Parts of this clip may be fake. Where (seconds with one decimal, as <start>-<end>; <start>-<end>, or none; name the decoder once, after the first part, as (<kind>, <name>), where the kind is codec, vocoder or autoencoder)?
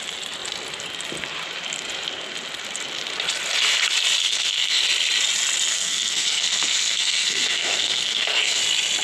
4.2-4.8 (codec, SNAC); 5.7-8.6